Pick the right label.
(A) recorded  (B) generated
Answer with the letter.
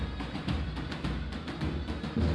A